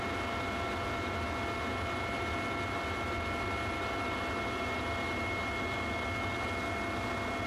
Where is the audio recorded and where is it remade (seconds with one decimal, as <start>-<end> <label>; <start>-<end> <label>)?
0.0-7.5 recorded